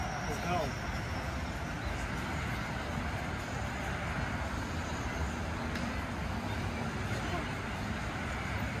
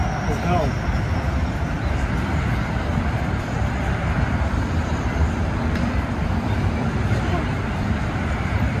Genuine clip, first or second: first